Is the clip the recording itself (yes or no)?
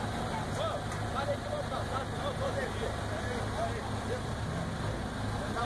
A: yes